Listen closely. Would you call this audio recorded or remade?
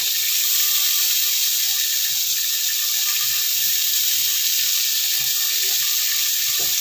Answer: remade